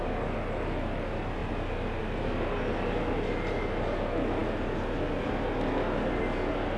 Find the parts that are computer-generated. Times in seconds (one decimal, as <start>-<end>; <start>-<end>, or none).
none

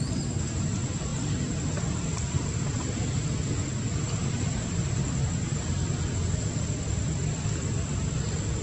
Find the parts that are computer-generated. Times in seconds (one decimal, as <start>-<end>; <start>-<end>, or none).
none

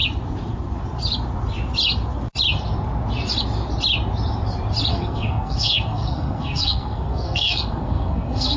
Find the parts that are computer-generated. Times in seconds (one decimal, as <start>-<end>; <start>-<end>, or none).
4.9-8.6

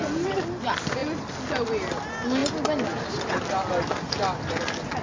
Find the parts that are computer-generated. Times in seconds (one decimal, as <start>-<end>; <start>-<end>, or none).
none